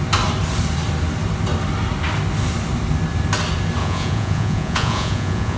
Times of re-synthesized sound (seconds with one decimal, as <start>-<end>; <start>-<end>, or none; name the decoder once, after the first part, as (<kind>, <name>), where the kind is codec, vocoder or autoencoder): 3.8-5.6 (vocoder, Vocos)